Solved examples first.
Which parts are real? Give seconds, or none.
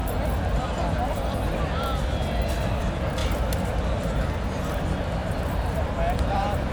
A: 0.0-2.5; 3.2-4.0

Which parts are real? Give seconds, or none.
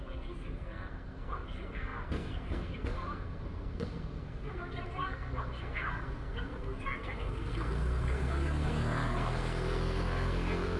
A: none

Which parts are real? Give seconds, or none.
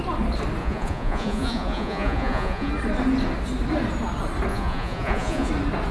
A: 0.0-0.6; 2.7-4.5; 5.5-5.9